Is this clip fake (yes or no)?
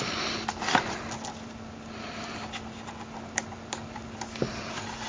no